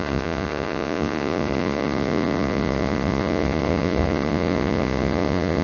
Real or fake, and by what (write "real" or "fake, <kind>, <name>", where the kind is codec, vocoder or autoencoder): fake, vocoder, Vocos